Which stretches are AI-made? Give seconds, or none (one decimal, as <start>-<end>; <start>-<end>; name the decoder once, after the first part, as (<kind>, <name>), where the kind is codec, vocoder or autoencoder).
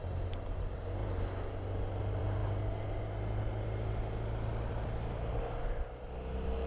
0.0-1.0 (vocoder, BigVGAN v2); 2.0-2.4; 4.7-6.7